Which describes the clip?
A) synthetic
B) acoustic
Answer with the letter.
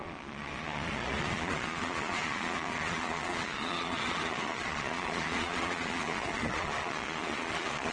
A